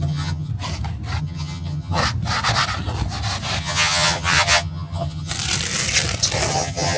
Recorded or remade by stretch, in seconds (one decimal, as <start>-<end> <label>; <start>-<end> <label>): 0.0-0.5 remade; 0.5-1.2 recorded; 1.2-2.0 remade; 2.0-3.6 recorded; 3.6-5.3 remade; 5.3-6.5 recorded; 6.5-7.0 remade